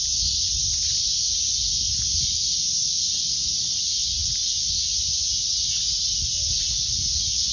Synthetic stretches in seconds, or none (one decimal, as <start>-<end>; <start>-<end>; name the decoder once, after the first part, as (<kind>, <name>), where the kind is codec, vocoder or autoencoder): none